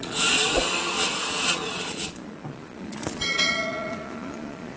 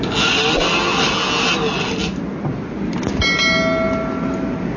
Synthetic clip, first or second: first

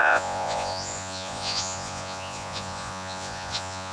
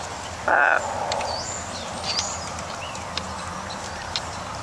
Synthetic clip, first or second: first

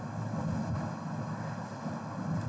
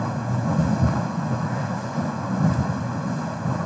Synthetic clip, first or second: second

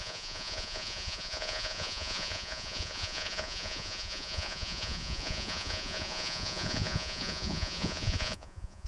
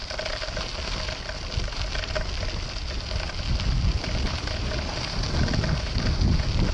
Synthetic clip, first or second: first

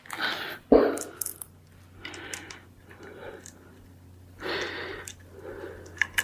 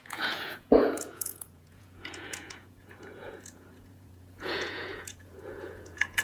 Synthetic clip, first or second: second